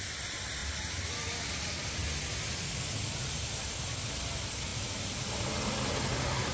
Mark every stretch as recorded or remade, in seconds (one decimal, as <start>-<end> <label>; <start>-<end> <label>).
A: 0.0-6.5 recorded